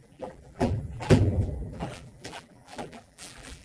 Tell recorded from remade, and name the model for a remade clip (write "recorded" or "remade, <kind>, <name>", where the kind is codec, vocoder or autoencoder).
remade, vocoder, BigVGAN v2